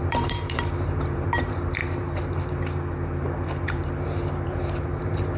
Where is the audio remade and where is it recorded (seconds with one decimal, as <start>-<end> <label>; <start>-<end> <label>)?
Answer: 0.0-5.4 remade